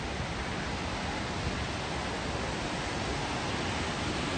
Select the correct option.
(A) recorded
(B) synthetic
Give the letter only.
A